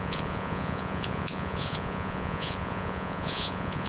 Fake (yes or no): yes